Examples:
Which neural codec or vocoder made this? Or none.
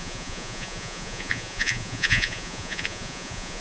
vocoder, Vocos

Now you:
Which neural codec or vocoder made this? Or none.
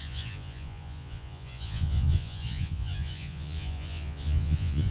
vocoder, Vocos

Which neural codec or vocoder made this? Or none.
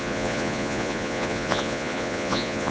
vocoder, Vocos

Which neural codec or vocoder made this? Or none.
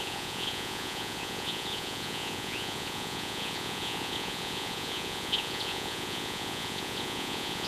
vocoder, Vocos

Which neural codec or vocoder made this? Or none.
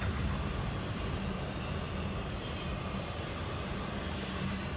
none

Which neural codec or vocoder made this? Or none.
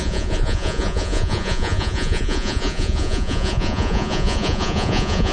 vocoder, Vocos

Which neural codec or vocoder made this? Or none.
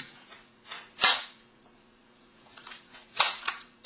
vocoder, Vocos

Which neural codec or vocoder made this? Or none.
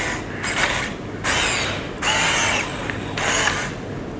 none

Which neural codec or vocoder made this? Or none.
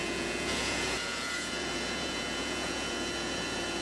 vocoder, Vocos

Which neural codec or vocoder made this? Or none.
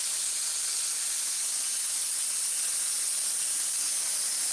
none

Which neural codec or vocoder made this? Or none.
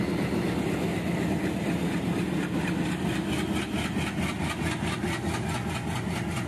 none